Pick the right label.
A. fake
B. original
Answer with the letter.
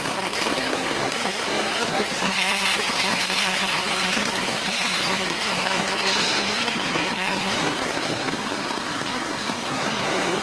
A